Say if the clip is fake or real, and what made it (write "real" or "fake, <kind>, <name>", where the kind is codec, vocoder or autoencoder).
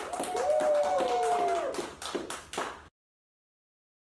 real